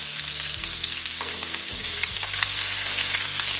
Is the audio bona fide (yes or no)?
no